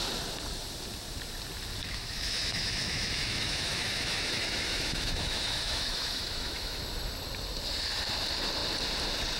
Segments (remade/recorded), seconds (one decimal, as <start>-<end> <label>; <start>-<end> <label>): 0.0-1.8 recorded; 1.8-6.8 remade; 6.8-9.4 recorded